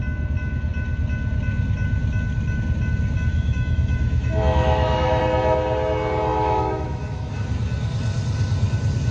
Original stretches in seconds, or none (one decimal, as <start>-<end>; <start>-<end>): 0.0-3.3; 5.2-6.3; 7.3-9.1